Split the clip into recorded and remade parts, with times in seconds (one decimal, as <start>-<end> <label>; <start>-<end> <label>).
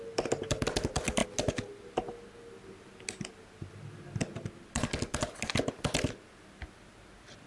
0.0-7.5 recorded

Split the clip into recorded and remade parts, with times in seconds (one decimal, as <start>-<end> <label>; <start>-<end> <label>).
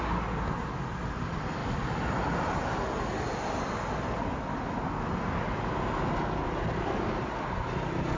0.0-8.2 recorded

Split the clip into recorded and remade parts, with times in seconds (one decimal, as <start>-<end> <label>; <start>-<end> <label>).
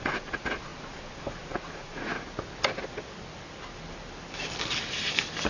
0.0-2.1 remade; 2.1-5.5 recorded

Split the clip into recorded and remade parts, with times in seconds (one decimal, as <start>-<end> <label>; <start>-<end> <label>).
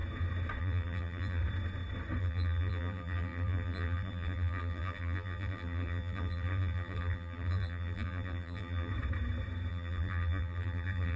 0.0-0.6 recorded; 0.6-1.4 remade; 1.4-2.2 recorded; 2.2-8.9 remade; 8.9-9.7 recorded; 9.7-11.2 remade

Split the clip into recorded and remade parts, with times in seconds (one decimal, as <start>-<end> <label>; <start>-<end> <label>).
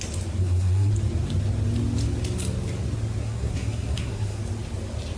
0.0-0.4 recorded; 0.4-0.9 remade; 0.9-3.2 recorded; 3.2-4.4 remade; 4.4-5.2 recorded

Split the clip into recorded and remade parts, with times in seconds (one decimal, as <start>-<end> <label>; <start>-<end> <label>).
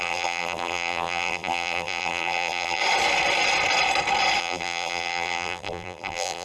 0.0-2.8 remade; 2.8-4.4 recorded; 4.4-6.4 remade